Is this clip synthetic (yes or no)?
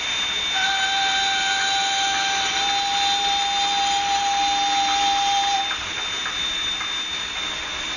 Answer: no